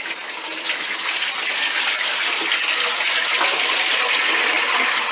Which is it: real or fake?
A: real